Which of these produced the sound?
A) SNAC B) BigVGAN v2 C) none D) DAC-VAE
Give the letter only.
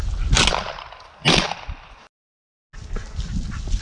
C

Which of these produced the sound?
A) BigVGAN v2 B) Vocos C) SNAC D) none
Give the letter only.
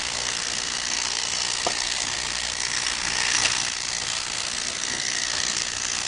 C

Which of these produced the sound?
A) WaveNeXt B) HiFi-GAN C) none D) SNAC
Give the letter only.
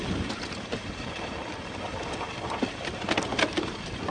C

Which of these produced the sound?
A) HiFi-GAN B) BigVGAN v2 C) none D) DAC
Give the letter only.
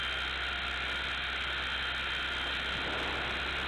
C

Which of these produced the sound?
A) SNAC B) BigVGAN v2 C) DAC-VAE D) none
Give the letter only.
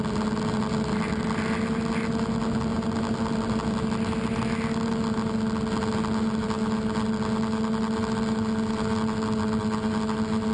D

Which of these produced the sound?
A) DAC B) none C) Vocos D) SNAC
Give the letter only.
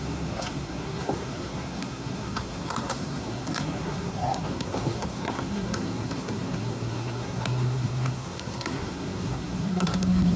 D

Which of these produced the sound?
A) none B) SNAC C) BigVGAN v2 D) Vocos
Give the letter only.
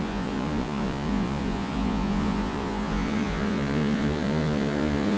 D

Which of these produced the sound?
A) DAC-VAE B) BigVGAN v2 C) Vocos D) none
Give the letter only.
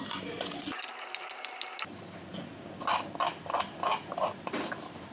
D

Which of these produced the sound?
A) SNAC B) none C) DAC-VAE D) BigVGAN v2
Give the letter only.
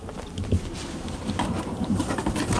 B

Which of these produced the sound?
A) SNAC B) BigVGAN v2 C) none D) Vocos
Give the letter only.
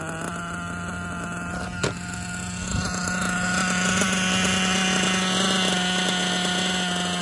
C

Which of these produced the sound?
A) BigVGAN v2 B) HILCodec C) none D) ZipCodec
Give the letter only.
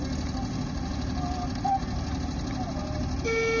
C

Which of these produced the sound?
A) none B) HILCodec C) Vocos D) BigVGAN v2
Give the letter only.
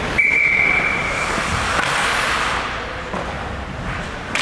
D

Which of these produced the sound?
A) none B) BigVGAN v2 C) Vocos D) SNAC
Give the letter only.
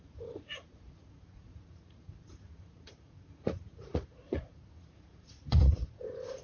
C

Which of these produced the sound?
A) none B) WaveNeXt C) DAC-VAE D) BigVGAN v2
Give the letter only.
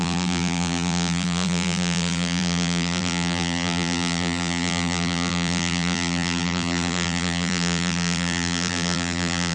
D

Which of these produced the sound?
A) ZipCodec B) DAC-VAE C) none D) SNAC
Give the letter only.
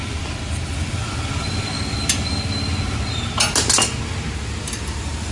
C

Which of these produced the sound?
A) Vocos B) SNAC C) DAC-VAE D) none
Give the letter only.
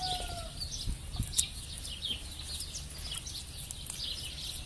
D